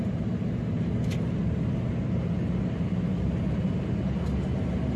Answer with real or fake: real